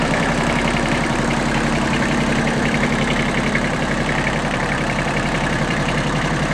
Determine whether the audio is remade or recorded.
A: remade